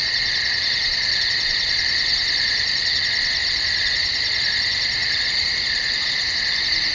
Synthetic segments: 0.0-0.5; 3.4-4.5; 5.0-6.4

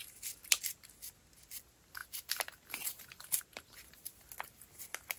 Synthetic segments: 0.4-0.9; 2.0-3.9